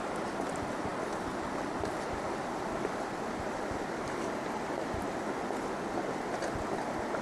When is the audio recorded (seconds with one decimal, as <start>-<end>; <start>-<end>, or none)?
0.0-7.2